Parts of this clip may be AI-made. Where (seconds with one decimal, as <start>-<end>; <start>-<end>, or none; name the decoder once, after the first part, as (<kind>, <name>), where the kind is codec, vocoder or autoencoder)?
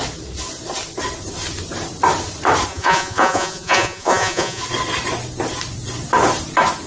2.7-4.6 (vocoder, Vocos)